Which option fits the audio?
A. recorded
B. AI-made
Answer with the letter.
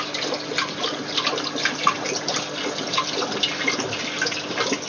A